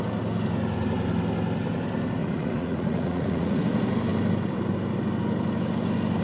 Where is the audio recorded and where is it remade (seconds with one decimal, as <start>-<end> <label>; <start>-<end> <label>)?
0.0-2.2 recorded; 2.2-3.6 remade; 3.6-6.2 recorded